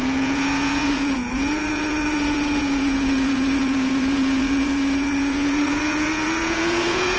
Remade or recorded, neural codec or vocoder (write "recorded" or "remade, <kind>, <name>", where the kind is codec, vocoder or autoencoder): remade, vocoder, Vocos